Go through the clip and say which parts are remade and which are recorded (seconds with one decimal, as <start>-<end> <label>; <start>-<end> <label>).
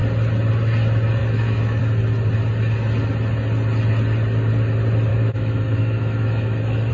0.0-1.2 recorded; 1.2-1.8 remade; 1.8-5.1 recorded; 5.1-6.9 remade